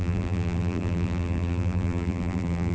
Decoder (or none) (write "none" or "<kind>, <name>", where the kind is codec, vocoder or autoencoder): vocoder, BigVGAN v2